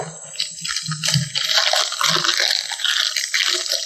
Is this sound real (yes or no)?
yes